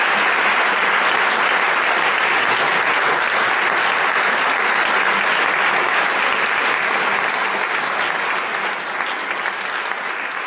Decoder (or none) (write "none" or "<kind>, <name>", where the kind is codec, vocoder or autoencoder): none